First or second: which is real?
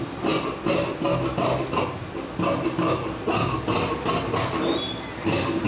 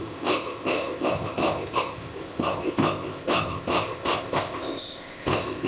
first